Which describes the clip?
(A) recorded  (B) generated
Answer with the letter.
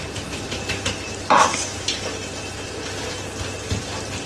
A